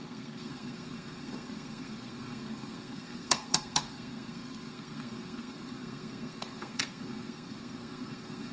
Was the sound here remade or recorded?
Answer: remade